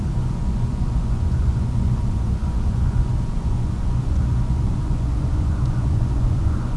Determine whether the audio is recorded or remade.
remade